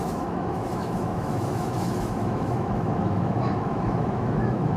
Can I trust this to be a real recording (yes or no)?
no